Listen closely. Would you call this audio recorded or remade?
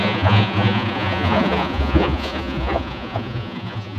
remade